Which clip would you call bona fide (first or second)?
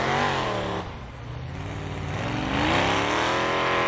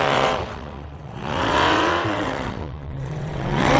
first